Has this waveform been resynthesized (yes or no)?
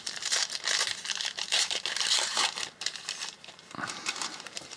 yes